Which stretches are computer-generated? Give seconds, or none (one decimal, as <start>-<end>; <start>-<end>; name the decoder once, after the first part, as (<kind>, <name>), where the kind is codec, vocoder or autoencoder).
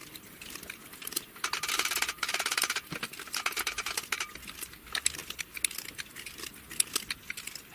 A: 0.0-3.8 (vocoder, BigVGAN v2)